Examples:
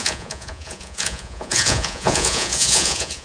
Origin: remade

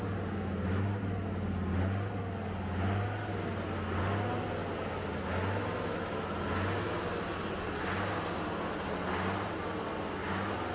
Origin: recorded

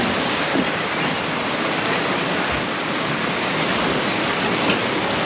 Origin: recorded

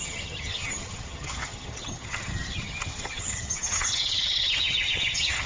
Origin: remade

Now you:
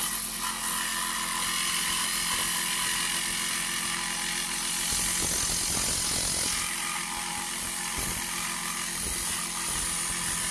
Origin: recorded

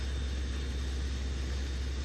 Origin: recorded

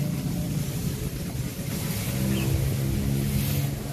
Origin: recorded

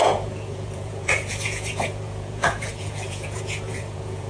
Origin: remade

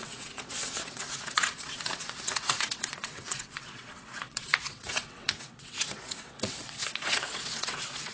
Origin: remade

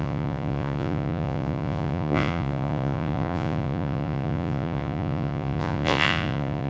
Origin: remade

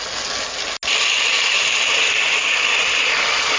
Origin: recorded